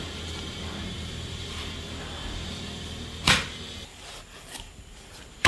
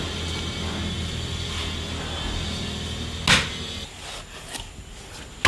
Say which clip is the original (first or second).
second